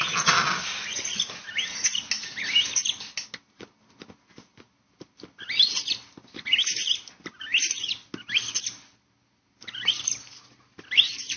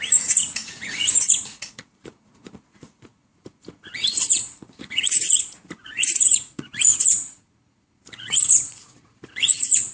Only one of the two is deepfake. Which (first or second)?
second